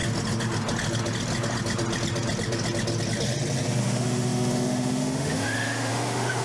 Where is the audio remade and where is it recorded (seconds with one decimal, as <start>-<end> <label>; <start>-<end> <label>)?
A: 0.0-3.8 recorded; 3.8-6.4 remade